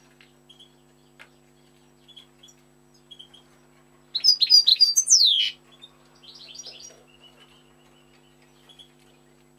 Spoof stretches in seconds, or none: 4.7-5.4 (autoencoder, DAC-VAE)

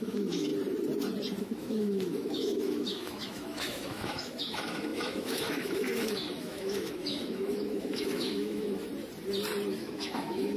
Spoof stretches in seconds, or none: 0.0-0.5 (autoencoder, DAC-VAE); 1.4-8.9; 9.7-10.6

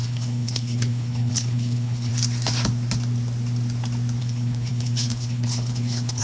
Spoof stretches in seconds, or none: 0.0-2.1 (codec, HILCodec); 4.2-6.2

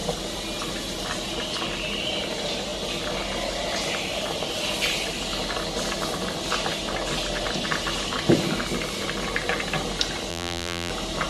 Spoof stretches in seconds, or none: 10.3-10.9 (vocoder, BigVGAN v2)